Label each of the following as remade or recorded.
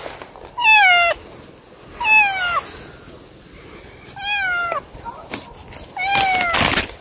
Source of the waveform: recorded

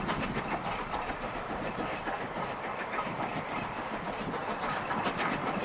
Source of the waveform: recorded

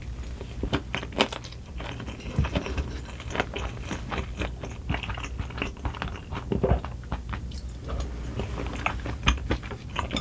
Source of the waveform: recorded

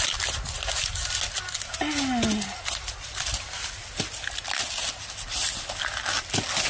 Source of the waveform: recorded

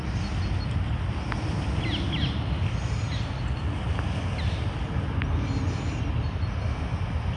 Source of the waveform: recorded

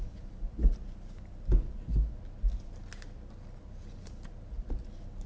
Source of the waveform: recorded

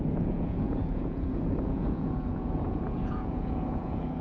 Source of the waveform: remade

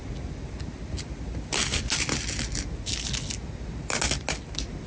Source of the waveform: recorded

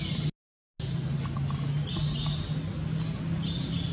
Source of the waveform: recorded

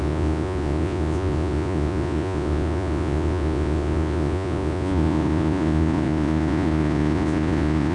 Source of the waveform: remade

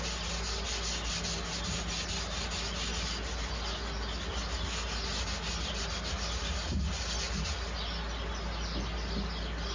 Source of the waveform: recorded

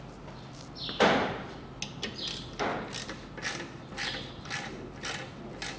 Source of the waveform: recorded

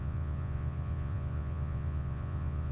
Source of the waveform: remade